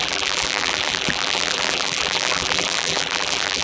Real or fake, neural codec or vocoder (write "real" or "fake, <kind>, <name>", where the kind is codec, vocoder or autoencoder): fake, vocoder, BigVGAN v2